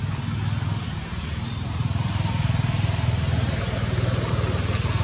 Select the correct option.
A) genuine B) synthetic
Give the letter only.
A